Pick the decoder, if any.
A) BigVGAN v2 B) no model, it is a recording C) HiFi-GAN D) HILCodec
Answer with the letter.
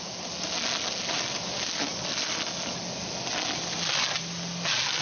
B